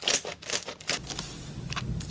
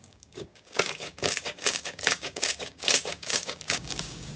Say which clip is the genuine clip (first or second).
first